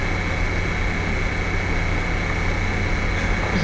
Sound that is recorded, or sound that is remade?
recorded